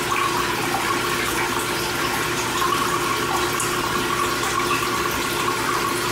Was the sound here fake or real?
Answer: real